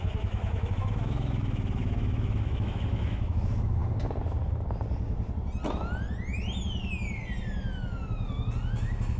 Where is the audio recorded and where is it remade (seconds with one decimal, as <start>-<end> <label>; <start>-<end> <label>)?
0.0-3.8 remade; 3.8-9.2 recorded